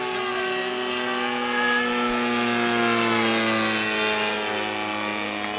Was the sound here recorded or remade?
recorded